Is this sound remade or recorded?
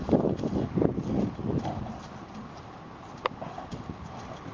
recorded